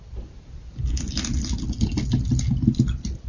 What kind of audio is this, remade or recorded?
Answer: recorded